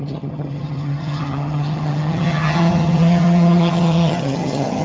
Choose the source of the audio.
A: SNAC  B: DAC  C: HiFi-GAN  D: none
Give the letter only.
C